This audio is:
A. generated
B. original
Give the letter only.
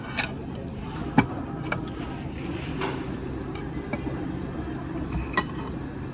B